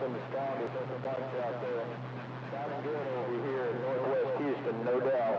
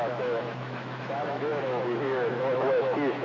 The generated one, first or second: second